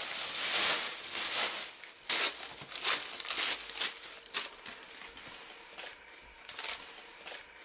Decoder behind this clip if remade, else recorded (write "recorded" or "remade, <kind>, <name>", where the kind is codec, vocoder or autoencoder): recorded